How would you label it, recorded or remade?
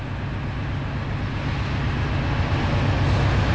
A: recorded